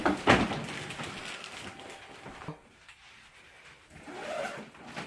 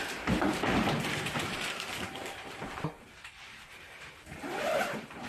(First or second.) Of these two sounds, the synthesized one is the second